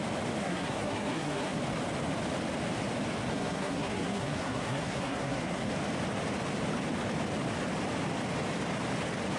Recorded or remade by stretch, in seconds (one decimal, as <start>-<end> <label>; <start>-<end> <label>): 0.0-0.4 recorded; 0.4-1.6 remade; 1.6-3.3 recorded; 3.3-5.7 remade; 5.7-9.4 recorded